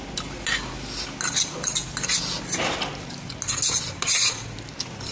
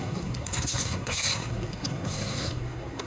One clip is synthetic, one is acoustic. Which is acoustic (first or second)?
first